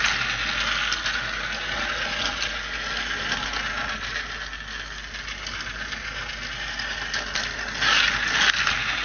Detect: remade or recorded recorded